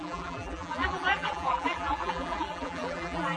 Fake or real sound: fake